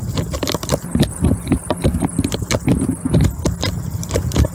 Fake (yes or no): no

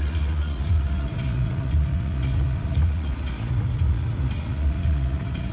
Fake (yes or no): yes